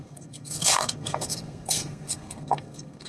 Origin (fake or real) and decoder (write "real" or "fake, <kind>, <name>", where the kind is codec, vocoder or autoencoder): fake, codec, SNAC